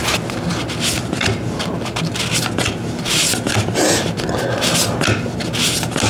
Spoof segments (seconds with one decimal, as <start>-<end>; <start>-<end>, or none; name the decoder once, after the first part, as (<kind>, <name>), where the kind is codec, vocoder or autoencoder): none